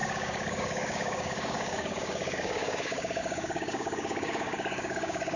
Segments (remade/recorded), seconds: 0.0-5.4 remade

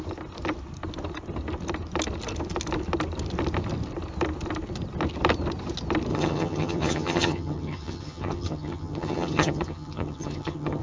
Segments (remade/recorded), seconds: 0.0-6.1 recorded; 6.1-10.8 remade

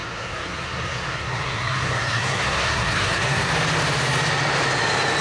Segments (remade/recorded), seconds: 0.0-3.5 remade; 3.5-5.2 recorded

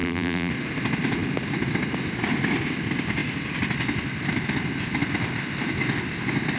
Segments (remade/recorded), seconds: 0.0-0.5 remade; 0.5-6.6 recorded

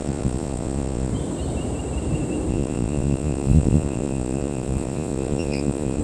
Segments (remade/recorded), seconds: 0.0-1.1 remade; 1.1-2.5 recorded; 2.5-6.0 remade